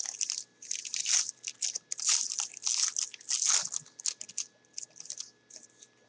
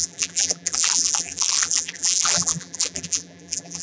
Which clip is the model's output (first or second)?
second